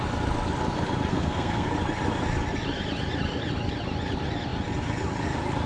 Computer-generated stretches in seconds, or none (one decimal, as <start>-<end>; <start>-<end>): 1.1-1.7